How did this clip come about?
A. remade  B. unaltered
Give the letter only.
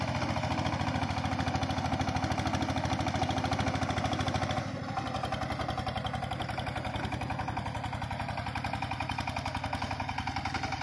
B